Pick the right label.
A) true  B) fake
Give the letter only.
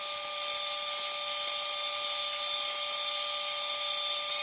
A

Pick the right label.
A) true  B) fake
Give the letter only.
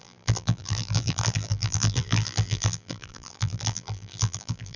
B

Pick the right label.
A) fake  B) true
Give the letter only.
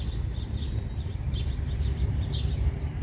A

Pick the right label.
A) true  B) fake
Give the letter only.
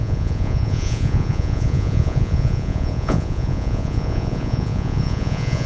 B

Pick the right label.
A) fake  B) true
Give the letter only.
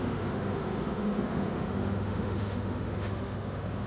A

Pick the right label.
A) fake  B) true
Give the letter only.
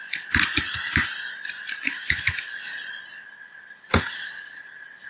B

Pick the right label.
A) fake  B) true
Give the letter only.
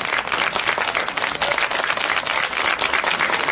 B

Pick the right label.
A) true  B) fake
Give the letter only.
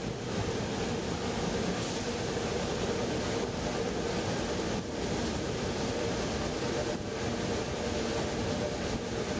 A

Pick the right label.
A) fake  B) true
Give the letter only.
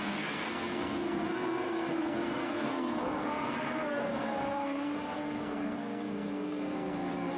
A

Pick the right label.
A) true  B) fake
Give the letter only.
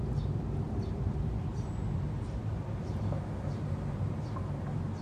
A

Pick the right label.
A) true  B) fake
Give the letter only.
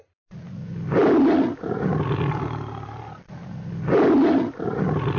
A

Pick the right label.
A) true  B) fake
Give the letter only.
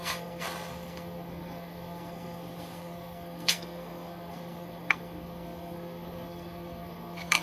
B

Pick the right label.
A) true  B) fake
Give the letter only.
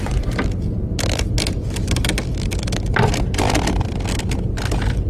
A